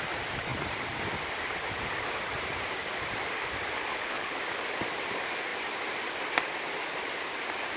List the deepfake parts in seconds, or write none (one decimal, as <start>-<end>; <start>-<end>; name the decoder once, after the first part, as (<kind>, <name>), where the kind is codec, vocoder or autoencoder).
3.9-4.4 (codec, HILCodec)